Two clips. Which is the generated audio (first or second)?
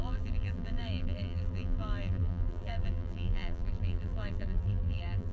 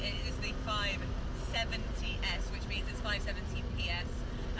first